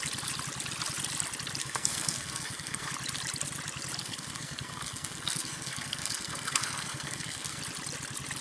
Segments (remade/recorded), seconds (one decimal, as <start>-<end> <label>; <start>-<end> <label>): 0.0-1.6 recorded; 1.6-2.9 remade; 2.9-4.0 recorded; 4.0-7.6 remade; 7.6-8.4 recorded